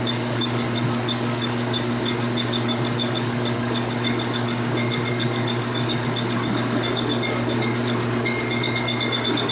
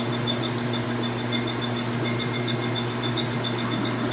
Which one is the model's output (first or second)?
first